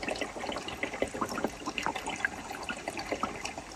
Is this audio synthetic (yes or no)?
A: no